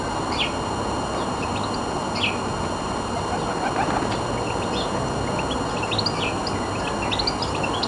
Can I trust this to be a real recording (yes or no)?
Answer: yes